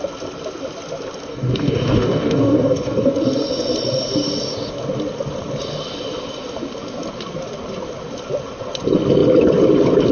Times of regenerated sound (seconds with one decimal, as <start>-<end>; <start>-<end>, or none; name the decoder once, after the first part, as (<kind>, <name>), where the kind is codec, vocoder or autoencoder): 1.3-3.1 (codec, DAC)